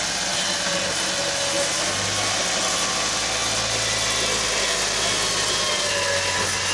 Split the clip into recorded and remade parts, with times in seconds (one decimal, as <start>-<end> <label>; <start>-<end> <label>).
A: 0.0-6.7 recorded